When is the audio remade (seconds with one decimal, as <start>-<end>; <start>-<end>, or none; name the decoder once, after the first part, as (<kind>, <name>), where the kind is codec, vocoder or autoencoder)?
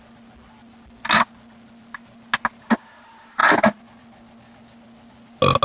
none